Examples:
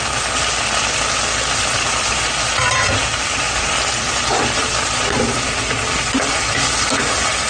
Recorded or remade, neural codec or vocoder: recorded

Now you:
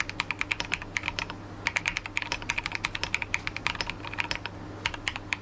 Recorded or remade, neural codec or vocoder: recorded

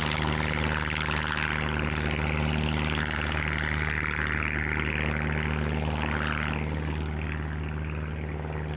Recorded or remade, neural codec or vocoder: recorded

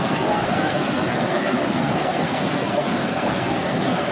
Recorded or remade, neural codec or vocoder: remade, codec, SNAC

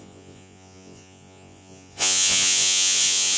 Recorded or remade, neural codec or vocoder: remade, vocoder, Vocos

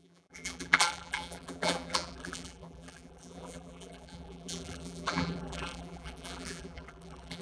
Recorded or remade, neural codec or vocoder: remade, vocoder, BigVGAN v2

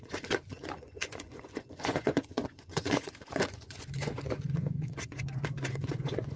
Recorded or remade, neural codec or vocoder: remade, vocoder, Vocos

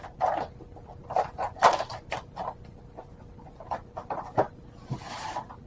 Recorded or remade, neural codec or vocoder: recorded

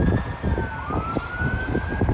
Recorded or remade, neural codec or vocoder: recorded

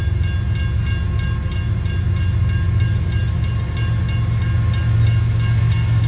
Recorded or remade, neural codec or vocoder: recorded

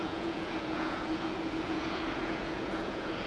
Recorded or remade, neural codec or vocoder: remade, vocoder, Vocos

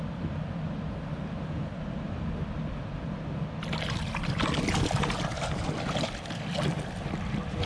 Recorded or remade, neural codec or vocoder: recorded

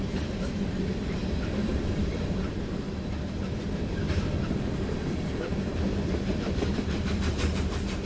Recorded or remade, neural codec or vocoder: remade, vocoder, BigVGAN v2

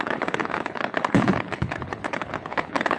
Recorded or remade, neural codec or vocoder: remade, codec, HILCodec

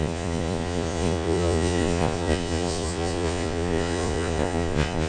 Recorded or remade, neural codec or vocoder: remade, vocoder, Vocos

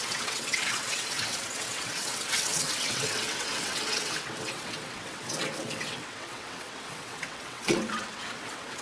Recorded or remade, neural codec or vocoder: remade, vocoder, WaveNeXt